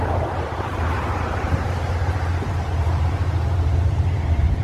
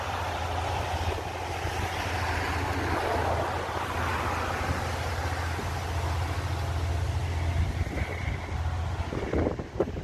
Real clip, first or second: second